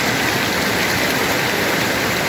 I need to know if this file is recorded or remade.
recorded